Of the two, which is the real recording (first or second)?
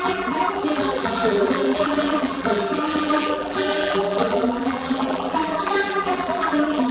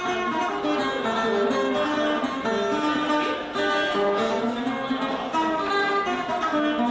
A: second